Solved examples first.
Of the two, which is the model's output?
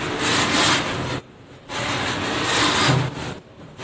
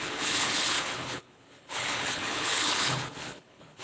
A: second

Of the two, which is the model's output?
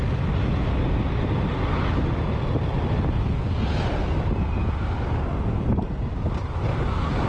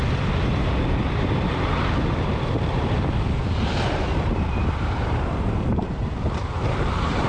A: second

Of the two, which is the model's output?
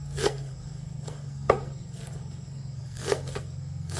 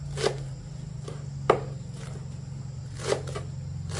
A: first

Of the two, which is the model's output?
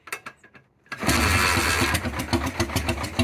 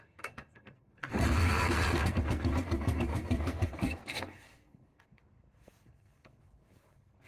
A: second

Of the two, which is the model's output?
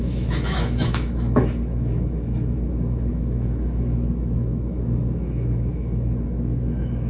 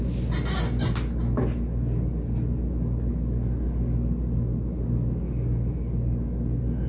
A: first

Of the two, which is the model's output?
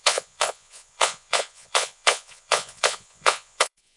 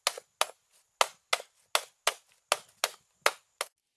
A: first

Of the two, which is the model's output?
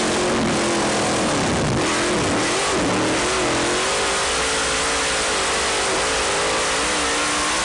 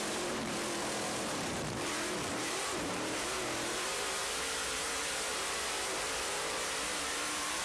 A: second